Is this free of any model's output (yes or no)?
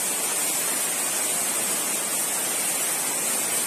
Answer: yes